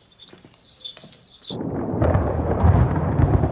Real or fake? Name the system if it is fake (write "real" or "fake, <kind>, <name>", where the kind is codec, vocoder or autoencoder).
fake, vocoder, BigVGAN v2